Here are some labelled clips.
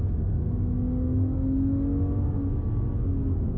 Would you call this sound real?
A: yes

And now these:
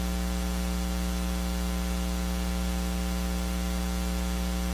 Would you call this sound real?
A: yes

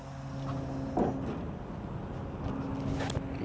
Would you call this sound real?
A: yes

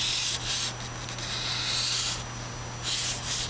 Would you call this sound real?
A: yes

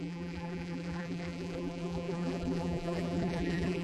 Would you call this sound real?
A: no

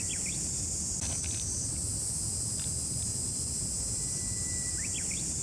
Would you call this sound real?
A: yes